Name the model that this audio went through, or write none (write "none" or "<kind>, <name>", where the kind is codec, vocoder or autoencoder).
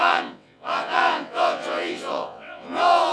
vocoder, WaveNeXt